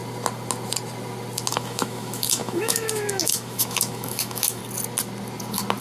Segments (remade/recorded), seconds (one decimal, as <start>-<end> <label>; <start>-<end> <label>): 0.0-1.5 recorded; 1.5-4.6 remade; 4.6-5.8 recorded